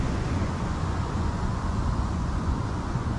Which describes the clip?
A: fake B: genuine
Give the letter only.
A